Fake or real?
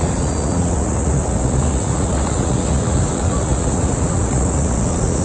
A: fake